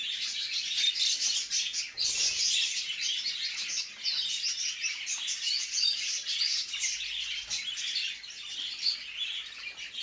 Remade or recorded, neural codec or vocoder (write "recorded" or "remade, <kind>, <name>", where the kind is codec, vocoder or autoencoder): recorded